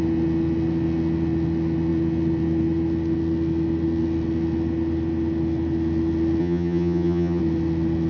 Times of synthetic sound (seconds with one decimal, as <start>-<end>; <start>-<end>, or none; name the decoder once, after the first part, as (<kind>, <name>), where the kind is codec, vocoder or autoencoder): 6.4-7.4 (vocoder, HiFi-GAN)